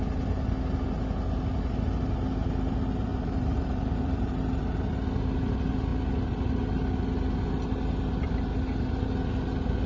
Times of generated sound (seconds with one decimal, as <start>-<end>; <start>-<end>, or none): 3.1-4.4